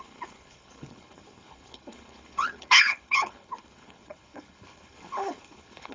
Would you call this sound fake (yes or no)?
yes